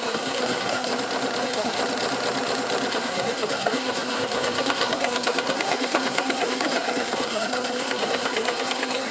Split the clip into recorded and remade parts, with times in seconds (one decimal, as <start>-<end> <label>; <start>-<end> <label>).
0.0-0.9 remade; 0.9-1.4 recorded; 1.4-1.8 remade; 1.8-2.9 recorded; 2.9-9.1 remade